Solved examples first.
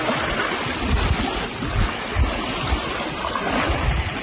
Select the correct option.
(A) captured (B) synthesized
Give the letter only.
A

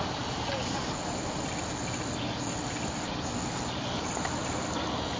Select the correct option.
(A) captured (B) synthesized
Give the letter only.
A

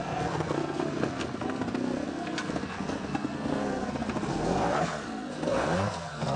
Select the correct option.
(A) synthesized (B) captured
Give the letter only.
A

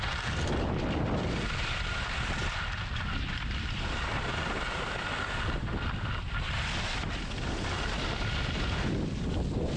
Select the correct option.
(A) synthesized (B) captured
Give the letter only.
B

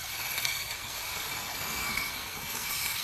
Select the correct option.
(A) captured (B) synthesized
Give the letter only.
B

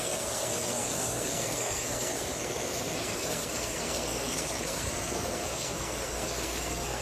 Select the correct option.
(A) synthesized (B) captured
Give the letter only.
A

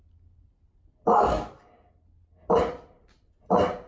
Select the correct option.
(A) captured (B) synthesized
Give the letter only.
A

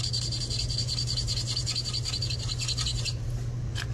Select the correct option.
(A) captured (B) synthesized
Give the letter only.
A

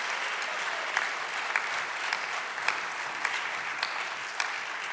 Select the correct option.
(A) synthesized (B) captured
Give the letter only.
B